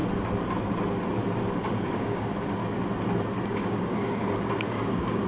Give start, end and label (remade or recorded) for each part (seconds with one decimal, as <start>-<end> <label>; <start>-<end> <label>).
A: 0.0-1.6 recorded; 1.6-2.6 remade; 2.6-3.4 recorded; 3.4-5.3 remade